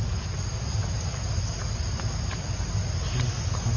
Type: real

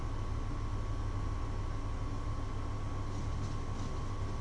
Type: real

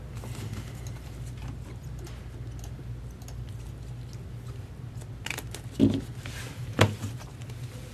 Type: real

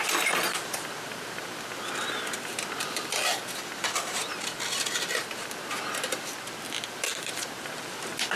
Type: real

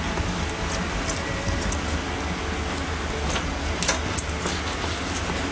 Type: real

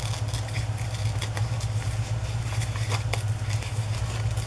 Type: real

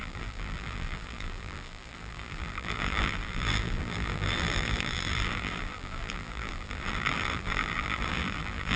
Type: fake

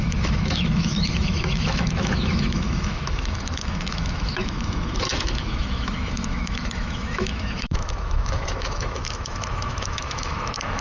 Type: fake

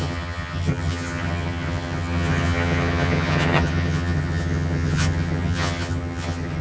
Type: fake